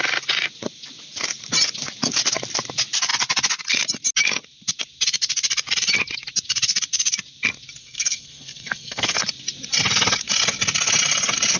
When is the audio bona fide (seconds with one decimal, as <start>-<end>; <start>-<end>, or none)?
0.0-7.8; 9.2-11.6